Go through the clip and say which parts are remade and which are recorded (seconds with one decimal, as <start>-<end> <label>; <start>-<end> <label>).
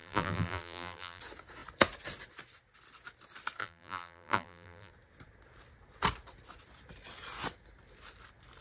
0.0-1.2 remade; 1.2-3.6 recorded; 3.6-4.9 remade; 4.9-8.6 recorded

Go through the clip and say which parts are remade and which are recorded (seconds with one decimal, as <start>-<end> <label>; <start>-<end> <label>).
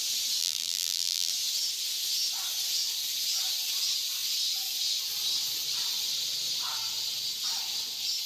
0.0-0.4 recorded; 0.4-1.3 remade; 1.3-8.3 recorded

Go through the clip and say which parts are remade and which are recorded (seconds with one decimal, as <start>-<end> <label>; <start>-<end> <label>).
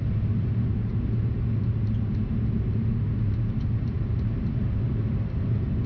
0.0-5.9 remade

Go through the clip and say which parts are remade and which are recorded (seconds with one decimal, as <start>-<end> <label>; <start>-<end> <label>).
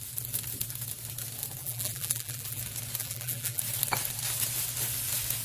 0.0-1.6 recorded; 1.6-2.6 remade; 2.6-3.0 recorded; 3.0-3.6 remade; 3.6-5.4 recorded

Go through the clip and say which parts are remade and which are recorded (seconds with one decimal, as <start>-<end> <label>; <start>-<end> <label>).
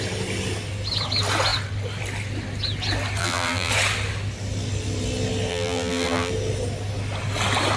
0.0-3.2 recorded; 3.2-3.7 remade; 3.7-5.5 recorded; 5.5-6.3 remade; 6.3-7.8 recorded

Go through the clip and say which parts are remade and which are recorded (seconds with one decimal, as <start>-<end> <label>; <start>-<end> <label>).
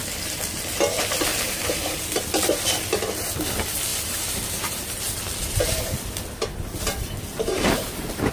0.0-1.3 recorded; 1.3-2.3 remade; 2.3-3.9 recorded; 3.9-8.3 remade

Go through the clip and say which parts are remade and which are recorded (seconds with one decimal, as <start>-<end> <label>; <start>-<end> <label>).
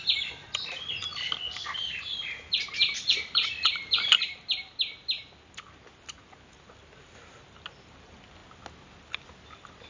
0.0-9.9 recorded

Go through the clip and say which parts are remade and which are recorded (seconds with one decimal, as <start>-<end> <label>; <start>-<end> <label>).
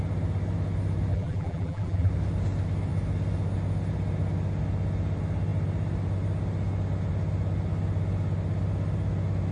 0.0-1.1 recorded; 1.1-2.1 remade; 2.1-9.5 recorded